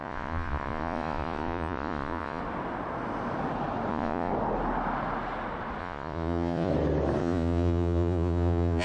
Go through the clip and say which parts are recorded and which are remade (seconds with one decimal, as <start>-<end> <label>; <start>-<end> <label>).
0.0-2.4 remade; 2.4-3.9 recorded; 3.9-4.3 remade; 4.3-5.8 recorded; 5.8-6.7 remade; 6.7-7.2 recorded; 7.2-8.8 remade